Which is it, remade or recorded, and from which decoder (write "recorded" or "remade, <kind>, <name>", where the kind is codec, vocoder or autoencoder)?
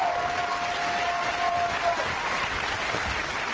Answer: recorded